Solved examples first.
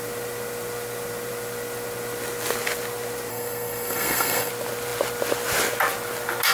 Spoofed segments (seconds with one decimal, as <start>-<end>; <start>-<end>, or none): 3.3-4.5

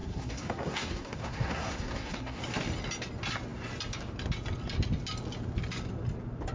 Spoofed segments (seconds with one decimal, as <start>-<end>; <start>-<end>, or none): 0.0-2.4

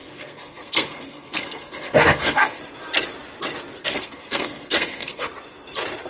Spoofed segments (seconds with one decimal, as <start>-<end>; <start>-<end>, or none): 0.0-2.6; 3.8-5.2

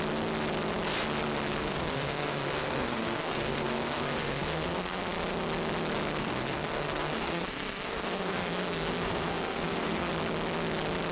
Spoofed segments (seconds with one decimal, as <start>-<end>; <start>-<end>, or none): 1.6-5.0; 6.2-10.1

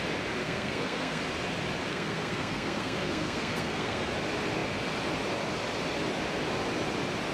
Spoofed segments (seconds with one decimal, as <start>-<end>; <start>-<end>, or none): 0.4-1.2; 1.9-4.1

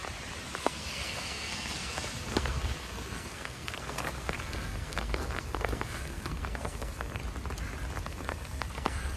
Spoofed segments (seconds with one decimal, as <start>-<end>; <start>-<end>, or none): 0.6-7.2; 8.0-9.2

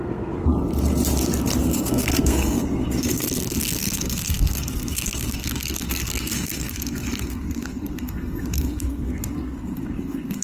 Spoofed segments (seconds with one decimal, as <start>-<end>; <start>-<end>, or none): 0.0-0.5; 1.6-10.4

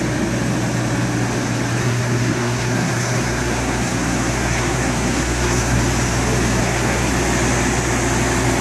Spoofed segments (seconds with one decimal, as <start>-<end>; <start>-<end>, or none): 1.8-5.8; 6.6-7.1